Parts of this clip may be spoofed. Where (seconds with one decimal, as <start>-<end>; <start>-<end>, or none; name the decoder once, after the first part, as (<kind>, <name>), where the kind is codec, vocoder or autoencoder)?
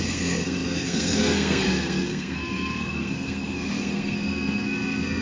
0.0-5.2 (codec, SNAC)